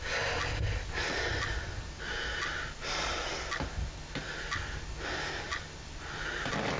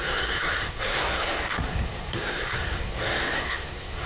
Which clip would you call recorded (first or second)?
first